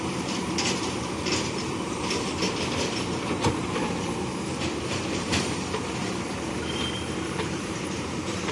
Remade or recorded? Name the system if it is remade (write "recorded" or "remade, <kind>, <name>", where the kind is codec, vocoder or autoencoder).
remade, vocoder, BigVGAN v2